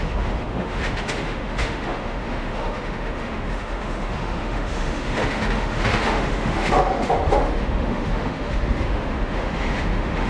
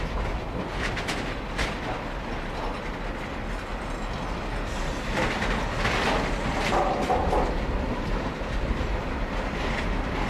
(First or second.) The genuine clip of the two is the second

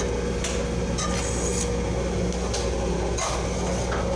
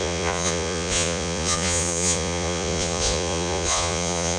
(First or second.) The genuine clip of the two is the first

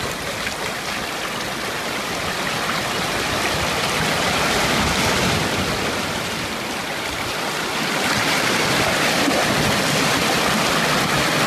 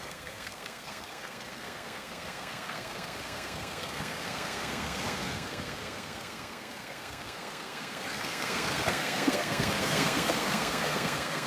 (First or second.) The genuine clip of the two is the first